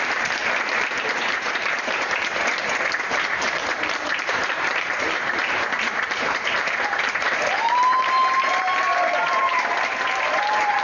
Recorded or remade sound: remade